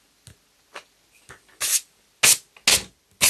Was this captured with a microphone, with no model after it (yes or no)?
yes